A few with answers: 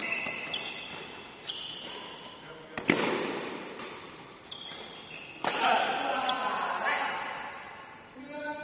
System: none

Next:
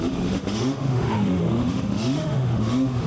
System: autoencoder, DAC-VAE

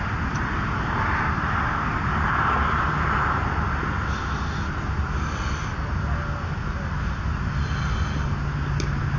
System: none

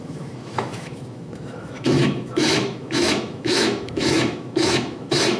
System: autoencoder, DAC-VAE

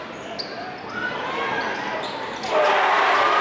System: none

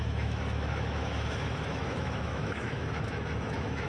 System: autoencoder, DAC-VAE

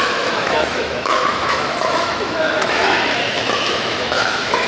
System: autoencoder, DAC-VAE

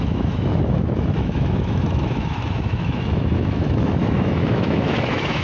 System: autoencoder, DAC-VAE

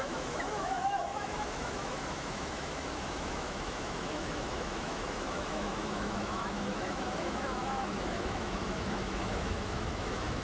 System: autoencoder, DAC-VAE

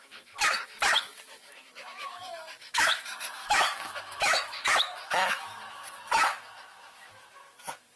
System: autoencoder, DAC-VAE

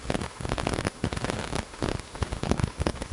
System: autoencoder, DAC-VAE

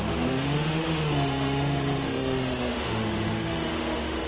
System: autoencoder, DAC-VAE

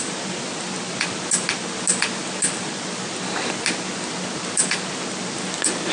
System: none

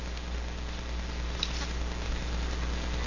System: none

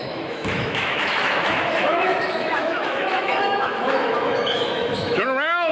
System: autoencoder, DAC-VAE